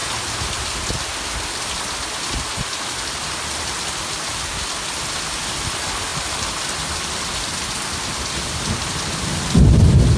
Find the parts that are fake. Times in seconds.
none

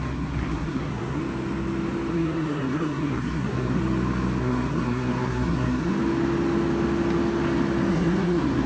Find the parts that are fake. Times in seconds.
0.0-1.2 (codec, SNAC); 2.1-3.8; 4.4-5.9; 7.9-8.7

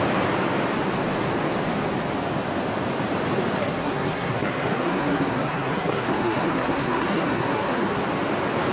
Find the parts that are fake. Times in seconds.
3.6-8.0 (codec, SNAC)